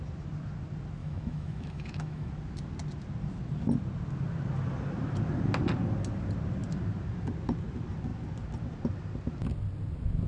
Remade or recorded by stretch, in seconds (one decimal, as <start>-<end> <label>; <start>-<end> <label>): 0.0-1.0 recorded; 1.0-2.3 remade; 2.3-10.3 recorded